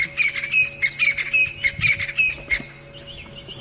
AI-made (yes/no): no